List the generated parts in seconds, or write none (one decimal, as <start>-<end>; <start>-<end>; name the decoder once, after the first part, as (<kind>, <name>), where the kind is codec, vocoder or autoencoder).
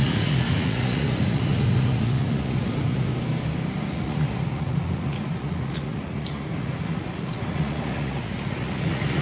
0.0-3.1 (vocoder, Vocos); 3.8-9.2